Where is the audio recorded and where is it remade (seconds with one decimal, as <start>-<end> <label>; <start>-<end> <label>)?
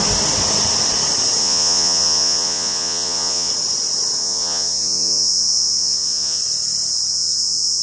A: 0.0-1.4 recorded; 1.4-3.5 remade; 3.5-4.2 recorded; 4.2-6.4 remade; 6.4-7.1 recorded; 7.1-7.8 remade